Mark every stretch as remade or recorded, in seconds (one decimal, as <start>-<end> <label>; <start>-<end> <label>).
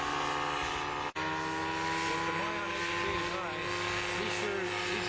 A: 0.0-5.1 recorded